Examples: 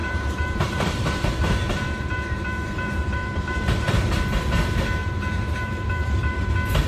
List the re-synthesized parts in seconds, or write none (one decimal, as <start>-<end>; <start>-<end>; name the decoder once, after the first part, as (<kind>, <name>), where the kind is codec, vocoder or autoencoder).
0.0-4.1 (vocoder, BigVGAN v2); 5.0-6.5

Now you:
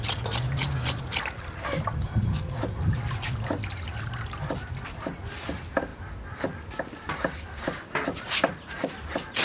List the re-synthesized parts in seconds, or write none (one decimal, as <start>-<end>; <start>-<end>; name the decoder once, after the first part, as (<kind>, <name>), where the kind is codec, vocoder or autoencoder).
none

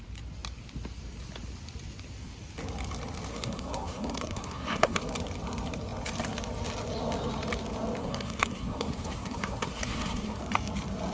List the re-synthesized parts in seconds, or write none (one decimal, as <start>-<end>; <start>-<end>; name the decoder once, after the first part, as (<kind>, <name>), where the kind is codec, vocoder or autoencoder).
3.3-5.0 (codec, SNAC); 8.0-10.4

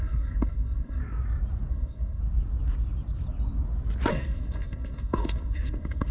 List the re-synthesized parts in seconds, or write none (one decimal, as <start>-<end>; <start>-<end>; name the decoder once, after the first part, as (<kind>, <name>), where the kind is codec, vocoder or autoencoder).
0.0-1.0 (codec, SNAC); 1.7-2.2; 4.1-6.1